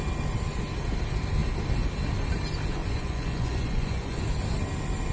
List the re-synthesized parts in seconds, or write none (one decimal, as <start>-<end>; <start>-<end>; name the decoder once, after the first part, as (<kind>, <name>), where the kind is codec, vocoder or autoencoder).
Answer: 2.8-4.2 (vocoder, Vocos)